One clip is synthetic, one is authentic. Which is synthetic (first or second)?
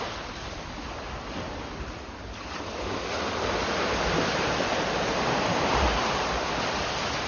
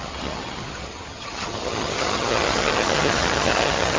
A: second